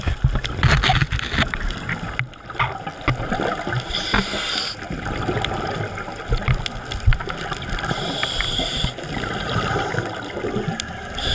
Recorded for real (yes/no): yes